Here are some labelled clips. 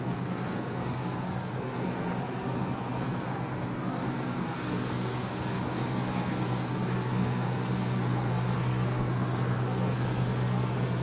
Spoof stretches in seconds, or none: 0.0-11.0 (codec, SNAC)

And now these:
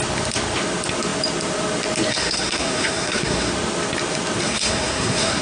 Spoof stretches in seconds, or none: 2.1-3.5 (codec, SNAC); 4.4-5.4